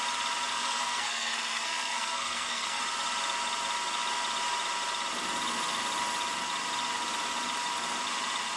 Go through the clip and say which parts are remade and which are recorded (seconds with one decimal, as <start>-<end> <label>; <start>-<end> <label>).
0.0-0.5 recorded; 0.5-2.8 remade; 2.8-8.6 recorded

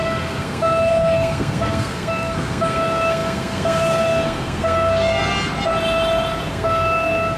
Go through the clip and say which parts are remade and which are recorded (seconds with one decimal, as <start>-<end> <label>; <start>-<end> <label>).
0.0-5.2 remade; 5.2-6.5 recorded; 6.5-7.4 remade